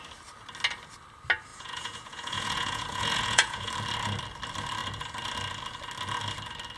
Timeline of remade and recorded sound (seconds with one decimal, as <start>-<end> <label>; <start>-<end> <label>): 0.0-1.5 recorded; 1.5-3.7 remade; 3.7-6.8 recorded